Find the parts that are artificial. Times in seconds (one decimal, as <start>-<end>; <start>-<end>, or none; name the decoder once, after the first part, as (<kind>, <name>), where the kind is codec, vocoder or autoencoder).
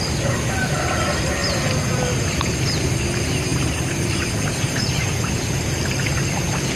3.5-5.8 (vocoder, BigVGAN v2)